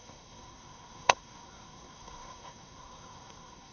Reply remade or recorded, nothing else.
remade